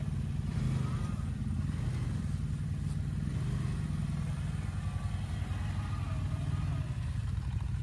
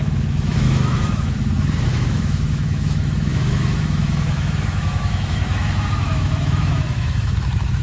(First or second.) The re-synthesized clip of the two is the second